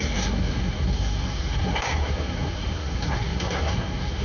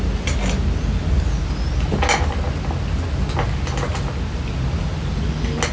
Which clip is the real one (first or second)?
second